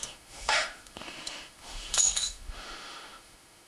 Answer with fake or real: fake